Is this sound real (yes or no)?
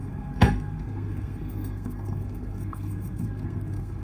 no